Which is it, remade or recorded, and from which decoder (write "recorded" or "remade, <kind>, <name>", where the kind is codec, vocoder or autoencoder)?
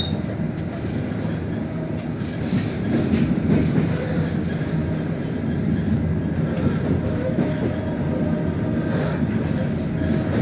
recorded